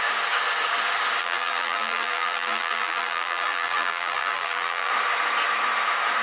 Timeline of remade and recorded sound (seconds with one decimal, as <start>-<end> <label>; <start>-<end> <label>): 0.0-1.2 recorded; 1.2-4.9 remade; 4.9-6.2 recorded